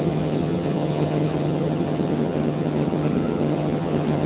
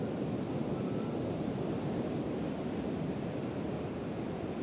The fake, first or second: first